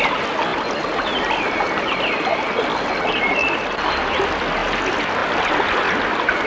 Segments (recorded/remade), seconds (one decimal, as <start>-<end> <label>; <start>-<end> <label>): 0.0-6.5 recorded